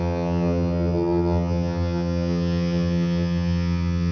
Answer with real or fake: fake